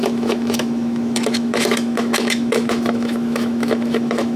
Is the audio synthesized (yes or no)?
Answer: yes